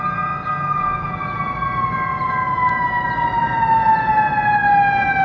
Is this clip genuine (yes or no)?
yes